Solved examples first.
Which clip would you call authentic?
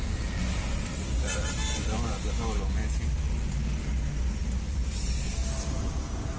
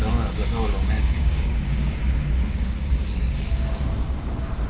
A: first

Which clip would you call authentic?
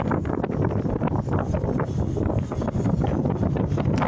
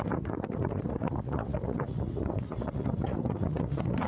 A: first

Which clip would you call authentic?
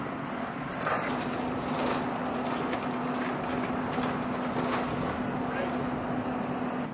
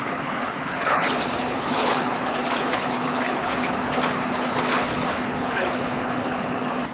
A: first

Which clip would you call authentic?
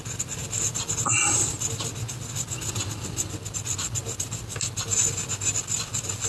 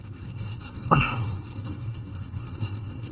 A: first